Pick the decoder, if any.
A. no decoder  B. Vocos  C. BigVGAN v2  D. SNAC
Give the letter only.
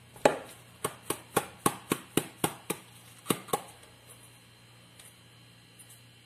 A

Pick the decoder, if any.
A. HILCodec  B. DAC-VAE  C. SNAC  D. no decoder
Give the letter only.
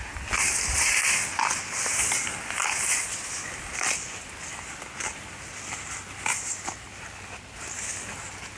D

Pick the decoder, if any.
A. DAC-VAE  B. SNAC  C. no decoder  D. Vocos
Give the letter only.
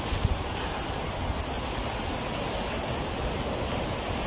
C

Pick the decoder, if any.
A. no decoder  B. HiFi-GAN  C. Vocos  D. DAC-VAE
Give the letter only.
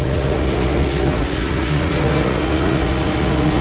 C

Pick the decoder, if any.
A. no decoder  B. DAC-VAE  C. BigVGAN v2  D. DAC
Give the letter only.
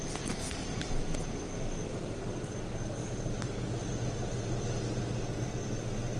A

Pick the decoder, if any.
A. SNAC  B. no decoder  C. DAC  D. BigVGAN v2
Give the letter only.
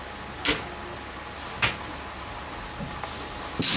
B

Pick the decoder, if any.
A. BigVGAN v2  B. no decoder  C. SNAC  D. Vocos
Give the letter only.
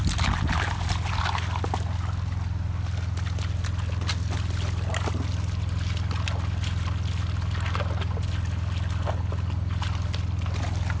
B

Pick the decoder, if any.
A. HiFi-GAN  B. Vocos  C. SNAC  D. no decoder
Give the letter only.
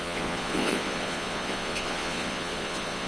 B